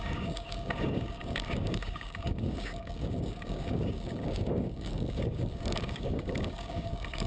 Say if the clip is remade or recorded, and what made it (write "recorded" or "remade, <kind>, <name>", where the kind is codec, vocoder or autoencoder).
remade, codec, DAC